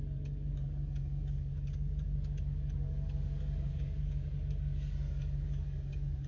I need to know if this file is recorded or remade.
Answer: remade